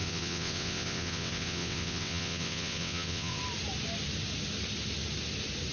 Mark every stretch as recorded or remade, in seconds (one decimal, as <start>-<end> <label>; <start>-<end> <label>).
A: 0.0-3.4 remade; 3.4-5.7 recorded